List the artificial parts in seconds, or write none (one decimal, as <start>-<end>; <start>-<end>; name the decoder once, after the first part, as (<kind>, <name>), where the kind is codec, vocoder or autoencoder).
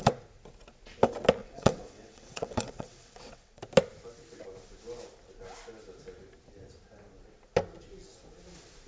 1.4-3.6 (vocoder, WaveNeXt)